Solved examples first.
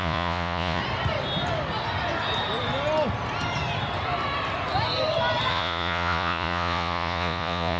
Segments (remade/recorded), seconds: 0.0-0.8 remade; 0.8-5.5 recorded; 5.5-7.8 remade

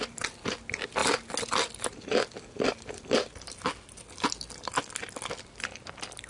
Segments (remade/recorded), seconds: 0.0-6.3 recorded